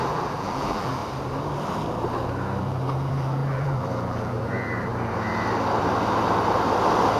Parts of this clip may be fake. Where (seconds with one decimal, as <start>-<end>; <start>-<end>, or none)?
0.0-1.0; 2.6-4.9